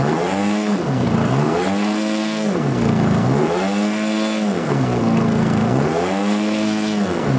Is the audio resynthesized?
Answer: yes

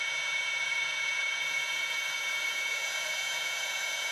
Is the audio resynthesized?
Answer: yes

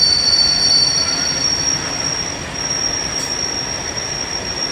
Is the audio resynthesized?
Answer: no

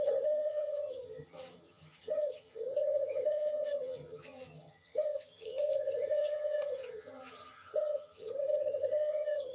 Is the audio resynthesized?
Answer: yes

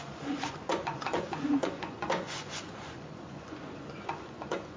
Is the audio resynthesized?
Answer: yes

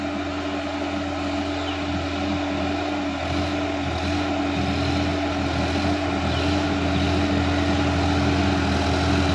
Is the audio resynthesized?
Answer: no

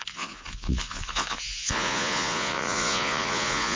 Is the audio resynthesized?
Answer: yes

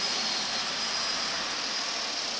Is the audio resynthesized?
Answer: no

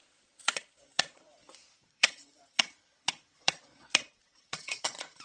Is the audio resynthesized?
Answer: yes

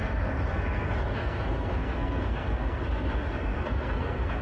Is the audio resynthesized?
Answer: yes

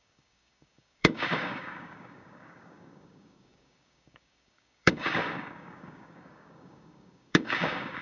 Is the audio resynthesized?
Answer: yes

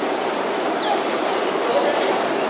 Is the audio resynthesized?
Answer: yes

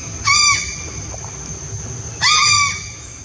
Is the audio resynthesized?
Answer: no